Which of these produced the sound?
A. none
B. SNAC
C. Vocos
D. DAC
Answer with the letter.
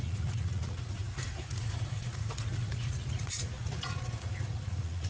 C